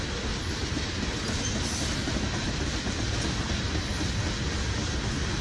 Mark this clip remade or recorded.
recorded